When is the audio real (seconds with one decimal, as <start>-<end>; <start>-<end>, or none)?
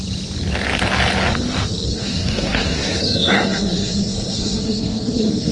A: 0.0-1.9